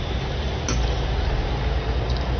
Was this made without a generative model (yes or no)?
yes